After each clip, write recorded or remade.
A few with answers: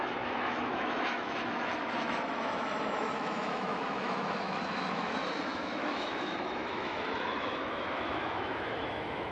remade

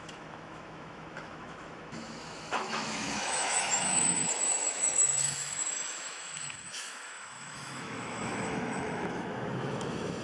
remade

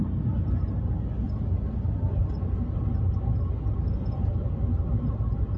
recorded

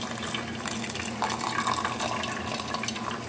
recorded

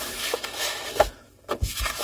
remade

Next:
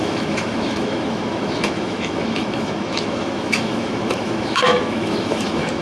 remade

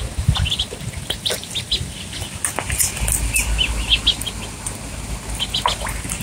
recorded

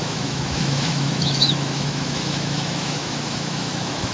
remade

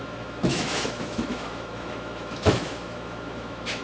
remade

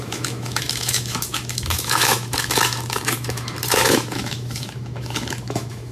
remade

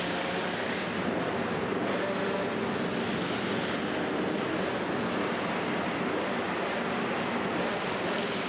recorded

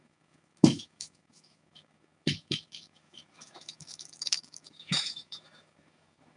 remade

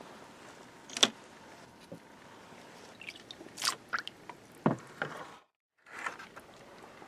recorded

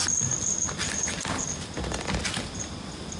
recorded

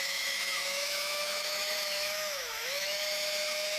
remade